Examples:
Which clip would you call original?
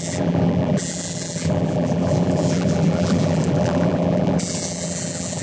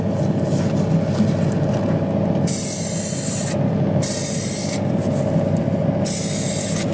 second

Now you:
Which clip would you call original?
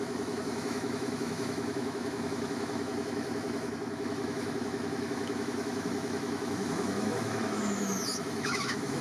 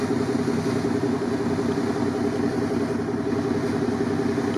second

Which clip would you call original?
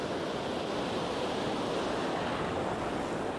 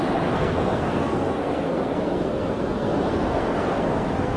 first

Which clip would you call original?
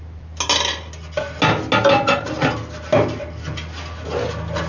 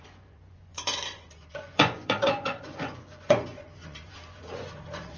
first